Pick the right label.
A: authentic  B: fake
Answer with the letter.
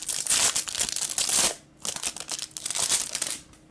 A